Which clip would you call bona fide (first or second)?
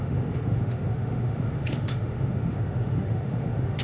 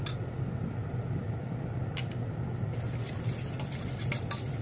second